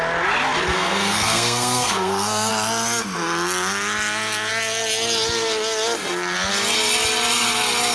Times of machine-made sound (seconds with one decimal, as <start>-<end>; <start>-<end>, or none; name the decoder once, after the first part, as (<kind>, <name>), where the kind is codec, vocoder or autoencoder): 0.7-2.5 (codec, SNAC)